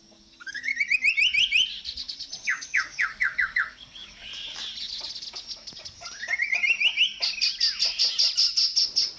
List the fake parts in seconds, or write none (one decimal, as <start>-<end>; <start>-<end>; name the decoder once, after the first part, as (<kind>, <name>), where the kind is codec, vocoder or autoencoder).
0.0-0.7 (codec, DAC); 2.4-4.3